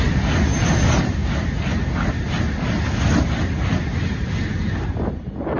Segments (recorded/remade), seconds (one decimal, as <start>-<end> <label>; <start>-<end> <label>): 0.0-5.6 recorded

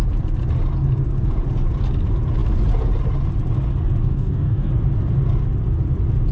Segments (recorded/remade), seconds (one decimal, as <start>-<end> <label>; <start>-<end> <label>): 0.0-4.0 recorded; 4.0-4.7 remade; 4.7-6.3 recorded